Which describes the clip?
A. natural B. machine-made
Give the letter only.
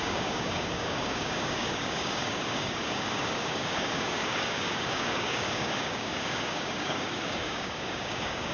B